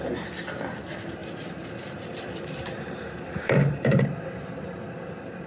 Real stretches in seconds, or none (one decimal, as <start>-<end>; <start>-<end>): 0.0-1.2; 4.0-5.5